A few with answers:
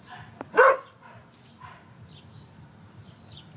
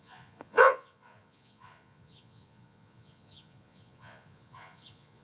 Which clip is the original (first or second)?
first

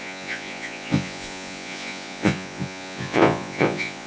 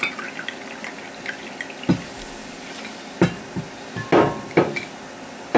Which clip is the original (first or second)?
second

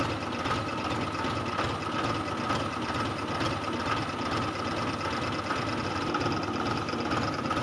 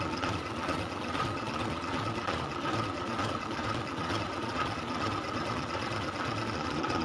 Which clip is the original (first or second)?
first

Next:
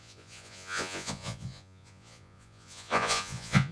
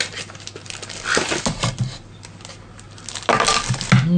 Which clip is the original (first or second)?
second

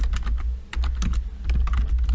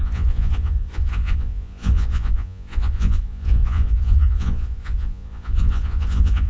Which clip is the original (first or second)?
first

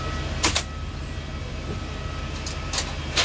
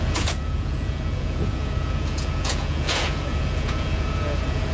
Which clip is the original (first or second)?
first